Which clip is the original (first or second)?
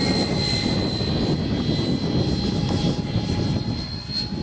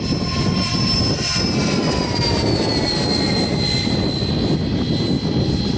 first